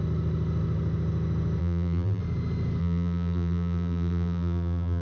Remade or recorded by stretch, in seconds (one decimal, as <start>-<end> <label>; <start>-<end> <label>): 0.0-1.6 recorded; 1.6-2.2 remade; 2.2-2.8 recorded; 2.8-5.0 remade